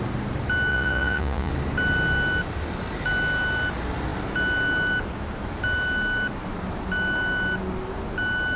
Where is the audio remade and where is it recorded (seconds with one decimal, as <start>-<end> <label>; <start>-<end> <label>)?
0.0-0.7 recorded; 0.7-1.5 remade; 1.5-8.6 recorded